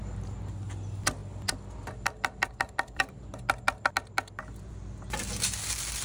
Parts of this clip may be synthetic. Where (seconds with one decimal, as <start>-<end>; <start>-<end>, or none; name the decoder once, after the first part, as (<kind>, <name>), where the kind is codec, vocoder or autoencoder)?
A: none